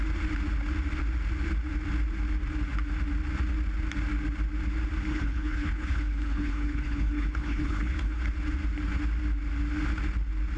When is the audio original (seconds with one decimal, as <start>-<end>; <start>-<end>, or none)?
0.0-5.1; 8.2-10.6